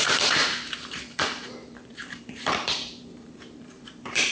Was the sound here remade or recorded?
remade